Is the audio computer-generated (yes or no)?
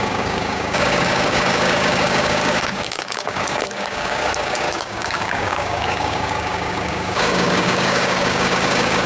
yes